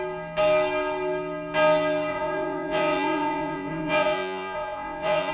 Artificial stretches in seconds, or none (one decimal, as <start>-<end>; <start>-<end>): 2.1-5.3